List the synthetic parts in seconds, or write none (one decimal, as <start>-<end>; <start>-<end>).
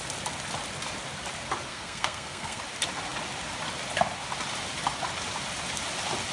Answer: 1.7-2.6